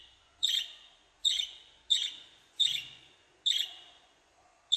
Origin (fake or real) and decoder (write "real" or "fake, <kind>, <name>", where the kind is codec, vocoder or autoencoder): fake, vocoder, Vocos